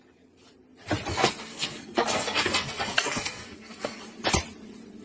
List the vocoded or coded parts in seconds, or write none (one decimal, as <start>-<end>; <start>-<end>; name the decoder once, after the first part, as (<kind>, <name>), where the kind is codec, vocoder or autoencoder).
1.1-4.1 (codec, SNAC)